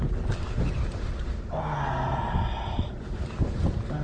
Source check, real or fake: real